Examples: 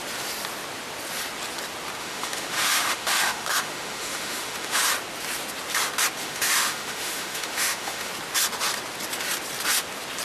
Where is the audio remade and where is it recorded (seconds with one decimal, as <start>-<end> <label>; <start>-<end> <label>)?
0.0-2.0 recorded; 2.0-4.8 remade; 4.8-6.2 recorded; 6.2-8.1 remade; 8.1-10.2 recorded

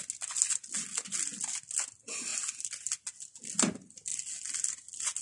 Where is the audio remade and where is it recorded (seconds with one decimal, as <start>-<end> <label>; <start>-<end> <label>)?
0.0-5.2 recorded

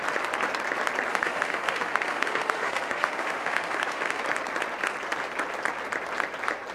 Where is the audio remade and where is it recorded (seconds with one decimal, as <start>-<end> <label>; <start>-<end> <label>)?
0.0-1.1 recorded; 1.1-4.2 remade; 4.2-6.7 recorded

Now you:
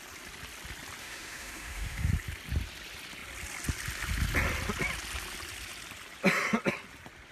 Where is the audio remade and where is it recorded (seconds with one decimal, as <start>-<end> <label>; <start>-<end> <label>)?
0.0-1.0 recorded; 1.0-2.1 remade; 2.1-7.3 recorded

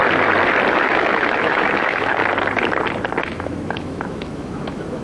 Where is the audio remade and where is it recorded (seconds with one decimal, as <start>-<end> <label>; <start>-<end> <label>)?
0.0-0.7 recorded; 0.7-2.2 remade; 2.2-3.2 recorded; 3.2-5.0 remade

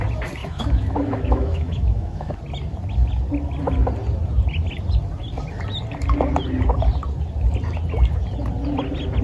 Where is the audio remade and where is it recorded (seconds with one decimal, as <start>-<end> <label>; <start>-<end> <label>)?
0.0-0.4 recorded; 0.4-2.3 remade; 2.3-9.2 recorded

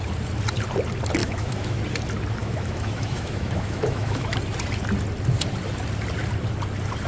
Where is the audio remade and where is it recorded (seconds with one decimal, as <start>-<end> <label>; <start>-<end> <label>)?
0.0-1.2 recorded; 1.2-1.8 remade; 1.8-2.4 recorded; 2.4-4.3 remade; 4.3-7.1 recorded